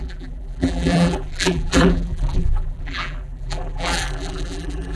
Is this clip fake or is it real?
fake